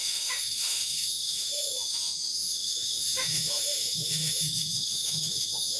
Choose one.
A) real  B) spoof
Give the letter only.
B